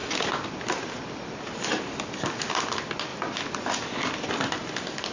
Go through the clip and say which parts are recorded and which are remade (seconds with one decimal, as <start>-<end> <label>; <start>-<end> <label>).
0.0-5.1 recorded